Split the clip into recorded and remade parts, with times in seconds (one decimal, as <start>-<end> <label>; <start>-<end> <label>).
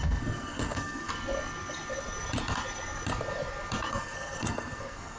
0.0-1.1 remade; 1.1-3.9 recorded; 3.9-5.2 remade